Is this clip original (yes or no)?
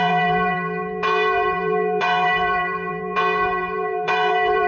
no